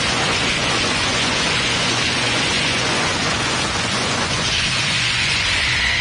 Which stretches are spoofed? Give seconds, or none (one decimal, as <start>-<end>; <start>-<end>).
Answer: 0.0-6.0